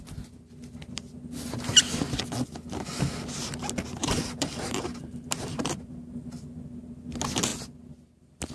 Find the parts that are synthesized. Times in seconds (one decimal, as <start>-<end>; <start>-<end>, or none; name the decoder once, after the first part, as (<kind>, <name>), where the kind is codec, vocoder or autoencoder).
4.0-6.2 (vocoder, BigVGAN v2)